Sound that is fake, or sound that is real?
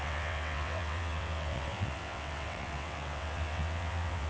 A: fake